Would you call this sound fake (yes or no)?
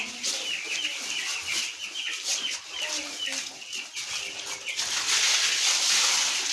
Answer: no